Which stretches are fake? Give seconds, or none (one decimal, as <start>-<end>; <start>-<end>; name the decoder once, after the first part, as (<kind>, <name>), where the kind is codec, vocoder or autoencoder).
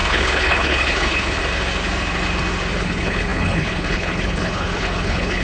0.0-1.4 (codec, HILCodec); 2.8-5.4